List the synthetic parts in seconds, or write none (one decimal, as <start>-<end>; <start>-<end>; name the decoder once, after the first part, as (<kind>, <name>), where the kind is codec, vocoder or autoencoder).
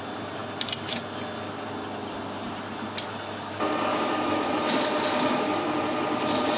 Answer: 3.9-4.5 (codec, DAC); 5.1-5.8